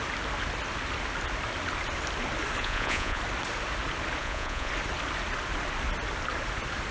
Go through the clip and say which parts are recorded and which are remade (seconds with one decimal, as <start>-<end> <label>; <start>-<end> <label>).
0.0-2.6 recorded; 2.6-3.2 remade; 3.2-4.2 recorded; 4.2-4.7 remade; 4.7-6.9 recorded

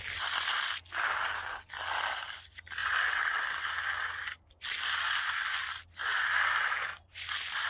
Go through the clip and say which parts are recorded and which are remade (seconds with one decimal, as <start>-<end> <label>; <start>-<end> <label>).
0.0-7.7 recorded

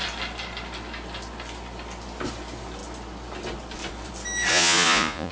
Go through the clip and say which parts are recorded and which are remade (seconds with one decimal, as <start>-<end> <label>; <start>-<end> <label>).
0.0-4.5 recorded; 4.5-5.3 remade

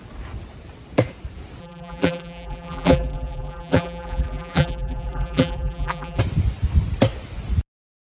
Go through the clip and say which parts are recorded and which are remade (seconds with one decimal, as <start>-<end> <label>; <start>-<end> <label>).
0.0-1.6 recorded; 1.6-6.2 remade; 6.2-8.0 recorded

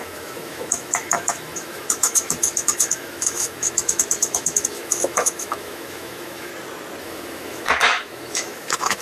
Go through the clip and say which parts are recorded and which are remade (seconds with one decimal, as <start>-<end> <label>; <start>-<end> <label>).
0.0-6.5 remade; 6.5-7.0 recorded; 7.0-9.0 remade

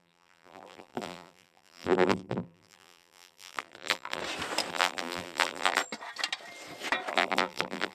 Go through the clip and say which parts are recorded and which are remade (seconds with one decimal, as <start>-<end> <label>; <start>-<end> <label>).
0.0-4.2 remade; 4.2-4.7 recorded; 4.7-5.8 remade; 5.8-7.1 recorded; 7.1-7.9 remade

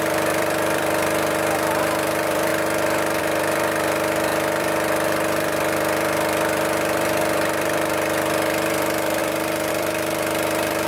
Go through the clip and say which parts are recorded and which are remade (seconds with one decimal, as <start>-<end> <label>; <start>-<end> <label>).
0.0-2.5 remade; 2.5-3.2 recorded; 3.2-10.9 remade

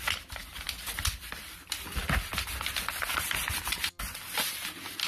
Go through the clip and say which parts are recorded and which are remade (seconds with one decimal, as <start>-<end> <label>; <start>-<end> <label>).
0.0-5.1 recorded